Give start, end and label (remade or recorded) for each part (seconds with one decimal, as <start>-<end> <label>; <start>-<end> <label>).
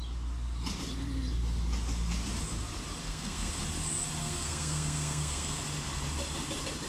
0.0-3.0 recorded; 3.0-3.5 remade; 3.5-4.2 recorded; 4.2-5.6 remade; 5.6-6.9 recorded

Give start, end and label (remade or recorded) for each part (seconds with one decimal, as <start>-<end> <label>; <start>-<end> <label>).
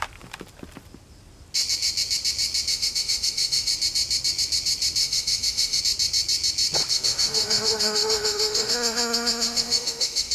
0.0-2.7 recorded; 2.7-3.7 remade; 3.7-5.0 recorded; 5.0-5.8 remade; 5.8-6.9 recorded; 6.9-10.3 remade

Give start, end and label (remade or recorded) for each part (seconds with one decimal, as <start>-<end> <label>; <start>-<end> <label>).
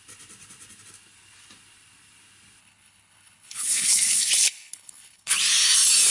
0.0-2.6 recorded; 2.6-5.4 remade; 5.4-6.1 recorded